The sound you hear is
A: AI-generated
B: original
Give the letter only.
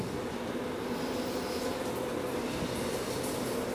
B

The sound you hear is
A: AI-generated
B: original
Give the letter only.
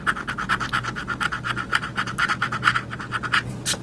B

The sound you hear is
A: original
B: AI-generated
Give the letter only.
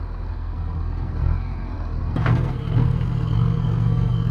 B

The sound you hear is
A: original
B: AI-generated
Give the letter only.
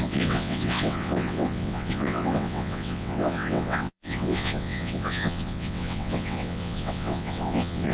B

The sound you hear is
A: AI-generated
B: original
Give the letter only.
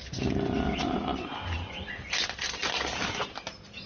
B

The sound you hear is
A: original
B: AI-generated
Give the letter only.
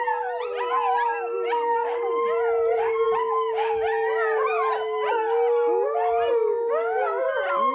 A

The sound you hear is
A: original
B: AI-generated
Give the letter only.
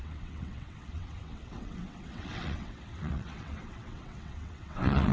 B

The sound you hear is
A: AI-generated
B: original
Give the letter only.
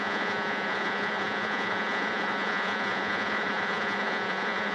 A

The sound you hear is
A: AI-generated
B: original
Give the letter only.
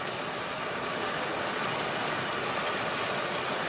B